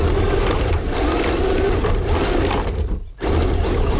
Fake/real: real